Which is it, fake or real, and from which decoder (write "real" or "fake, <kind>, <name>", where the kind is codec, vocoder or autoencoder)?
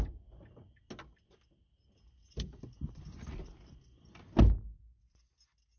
real